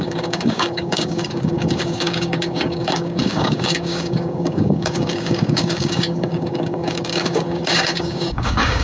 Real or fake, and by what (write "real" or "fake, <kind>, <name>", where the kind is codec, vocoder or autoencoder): fake, codec, DAC